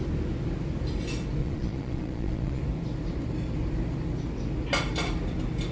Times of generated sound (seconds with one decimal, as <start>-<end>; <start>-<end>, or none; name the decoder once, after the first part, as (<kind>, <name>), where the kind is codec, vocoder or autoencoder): 1.4-2.6 (vocoder, Vocos)